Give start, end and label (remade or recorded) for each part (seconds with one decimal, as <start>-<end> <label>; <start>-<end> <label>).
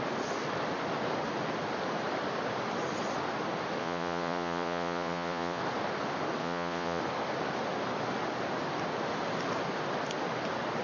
0.0-3.8 recorded; 3.8-5.6 remade; 5.6-6.4 recorded; 6.4-7.0 remade; 7.0-10.8 recorded